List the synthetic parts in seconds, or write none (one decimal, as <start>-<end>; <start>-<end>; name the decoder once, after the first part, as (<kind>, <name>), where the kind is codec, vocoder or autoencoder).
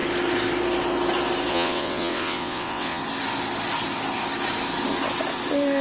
1.5-3.0 (vocoder, WaveNeXt)